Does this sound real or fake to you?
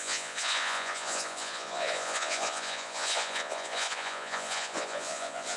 fake